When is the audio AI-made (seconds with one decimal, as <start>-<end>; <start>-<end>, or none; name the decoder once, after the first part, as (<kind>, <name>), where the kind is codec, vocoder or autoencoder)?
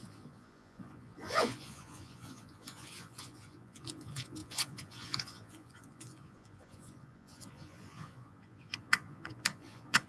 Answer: 0.0-10.1 (vocoder, Vocos)